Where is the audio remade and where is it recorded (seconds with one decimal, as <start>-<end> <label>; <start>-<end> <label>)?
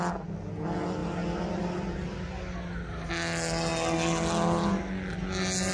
0.0-5.7 recorded